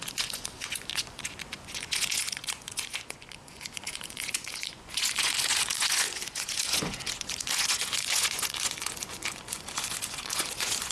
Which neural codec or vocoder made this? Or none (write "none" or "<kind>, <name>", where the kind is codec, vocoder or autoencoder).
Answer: vocoder, Vocos